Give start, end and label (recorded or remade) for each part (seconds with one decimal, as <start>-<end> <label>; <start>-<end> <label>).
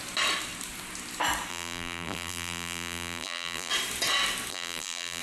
0.0-1.5 recorded; 1.5-3.7 remade; 3.7-4.5 recorded; 4.5-5.2 remade